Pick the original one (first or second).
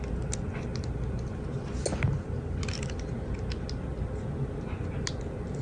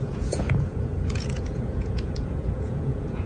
first